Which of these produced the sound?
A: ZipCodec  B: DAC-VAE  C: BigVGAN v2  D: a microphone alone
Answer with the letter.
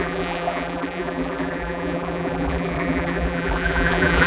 C